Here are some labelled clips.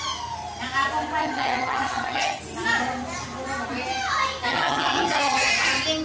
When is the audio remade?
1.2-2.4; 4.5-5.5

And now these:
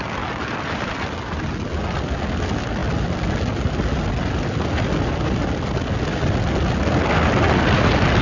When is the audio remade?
none

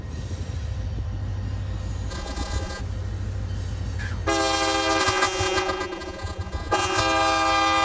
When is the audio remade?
2.1-2.8; 5.0-7.0

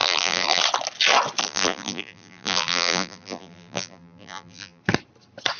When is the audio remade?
0.0-0.6; 1.4-4.8

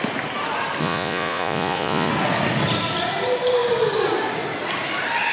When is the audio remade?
0.8-2.1

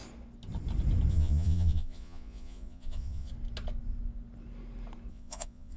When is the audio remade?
1.1-3.3; 5.1-5.8

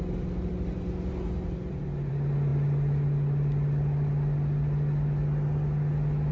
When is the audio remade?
none